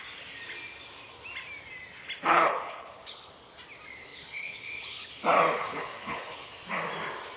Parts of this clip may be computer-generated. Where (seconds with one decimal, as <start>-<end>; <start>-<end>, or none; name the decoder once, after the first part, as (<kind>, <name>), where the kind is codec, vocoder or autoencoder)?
2.3-3.3 (codec, HILCodec); 4.1-5.1; 5.6-6.5